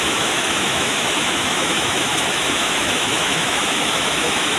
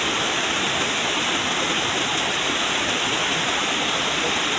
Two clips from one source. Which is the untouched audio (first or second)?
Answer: second